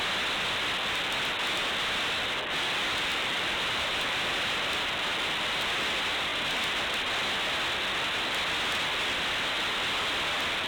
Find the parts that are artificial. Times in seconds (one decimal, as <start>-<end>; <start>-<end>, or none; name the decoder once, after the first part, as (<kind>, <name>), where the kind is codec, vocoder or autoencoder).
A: 3.1-4.7 (vocoder, BigVGAN v2)